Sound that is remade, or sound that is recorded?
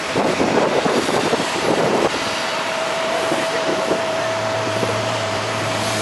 remade